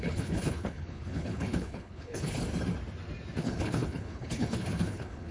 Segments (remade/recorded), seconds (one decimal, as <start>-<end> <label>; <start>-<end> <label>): 0.0-2.4 remade; 2.4-3.4 recorded; 3.4-5.3 remade